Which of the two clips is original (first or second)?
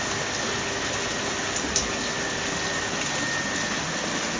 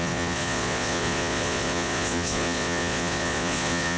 first